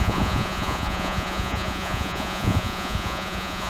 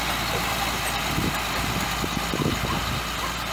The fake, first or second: first